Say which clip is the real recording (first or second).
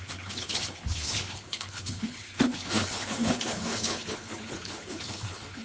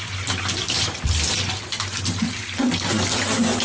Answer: second